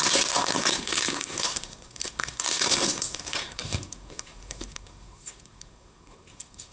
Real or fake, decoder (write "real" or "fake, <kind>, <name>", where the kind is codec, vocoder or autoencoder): fake, codec, SNAC